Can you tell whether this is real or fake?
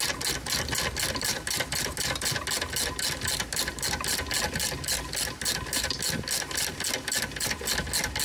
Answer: real